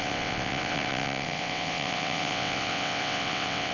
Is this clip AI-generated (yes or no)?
yes